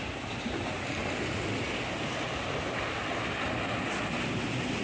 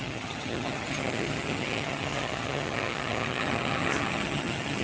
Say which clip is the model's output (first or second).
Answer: second